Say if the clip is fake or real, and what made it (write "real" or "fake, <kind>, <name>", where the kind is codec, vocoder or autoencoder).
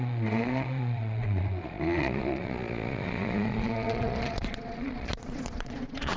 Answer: fake, vocoder, Vocos